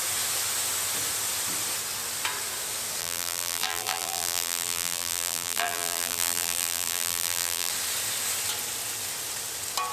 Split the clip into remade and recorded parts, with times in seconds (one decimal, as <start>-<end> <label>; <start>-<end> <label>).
0.0-3.0 recorded; 3.0-7.7 remade; 7.7-9.9 recorded